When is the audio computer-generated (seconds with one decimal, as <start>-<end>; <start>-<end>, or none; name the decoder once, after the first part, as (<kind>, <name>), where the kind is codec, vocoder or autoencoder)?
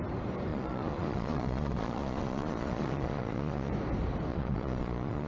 0.5-3.7 (vocoder, Vocos); 4.3-5.3